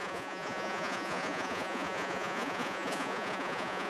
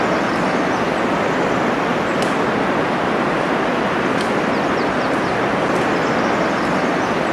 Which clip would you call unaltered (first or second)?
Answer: second